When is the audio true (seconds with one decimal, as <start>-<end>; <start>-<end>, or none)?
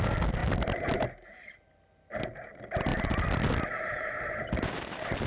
0.0-5.3